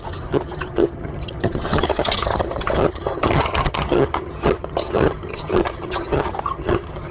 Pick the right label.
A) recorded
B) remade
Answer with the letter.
B